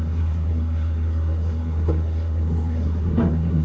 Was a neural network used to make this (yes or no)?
yes